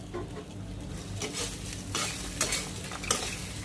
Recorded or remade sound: recorded